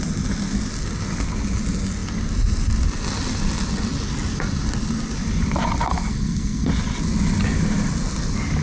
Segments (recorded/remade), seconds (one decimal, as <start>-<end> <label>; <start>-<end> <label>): 0.0-6.1 recorded; 6.1-6.7 remade; 6.7-8.6 recorded